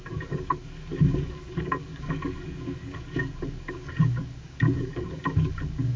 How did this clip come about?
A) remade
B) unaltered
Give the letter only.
A